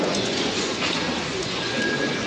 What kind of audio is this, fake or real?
fake